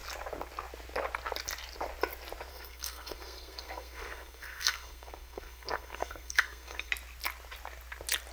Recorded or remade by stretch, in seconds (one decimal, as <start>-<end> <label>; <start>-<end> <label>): 0.0-2.5 recorded; 2.5-6.9 remade; 6.9-8.3 recorded